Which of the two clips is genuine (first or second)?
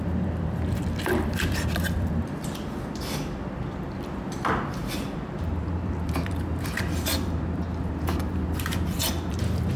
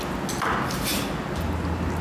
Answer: second